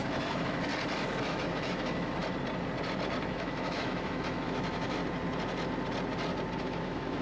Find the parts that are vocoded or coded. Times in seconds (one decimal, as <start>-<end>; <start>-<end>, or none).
0.0-0.7; 1.2-2.2; 3.2-5.0; 6.6-7.2